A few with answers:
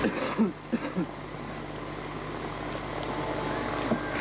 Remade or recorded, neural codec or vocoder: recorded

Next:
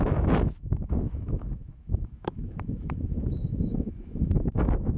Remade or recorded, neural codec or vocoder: remade, autoencoder, DAC-VAE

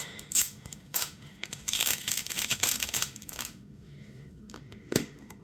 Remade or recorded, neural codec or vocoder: remade, autoencoder, DAC-VAE